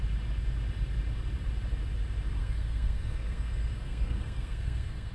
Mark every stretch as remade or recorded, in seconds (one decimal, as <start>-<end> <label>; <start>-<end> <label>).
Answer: 0.0-2.4 recorded; 2.4-5.1 remade